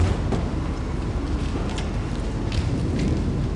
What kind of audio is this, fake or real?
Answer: real